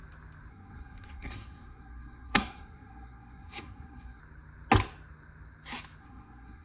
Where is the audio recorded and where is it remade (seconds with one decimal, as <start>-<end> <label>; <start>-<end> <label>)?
0.0-0.5 recorded; 0.5-4.2 remade; 4.2-6.0 recorded; 6.0-6.6 remade